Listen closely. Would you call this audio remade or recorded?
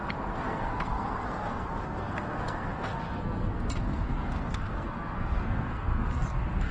remade